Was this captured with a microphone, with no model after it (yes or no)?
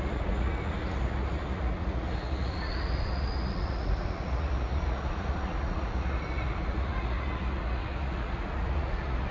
no